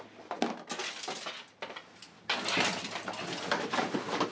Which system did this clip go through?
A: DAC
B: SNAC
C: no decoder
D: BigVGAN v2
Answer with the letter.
C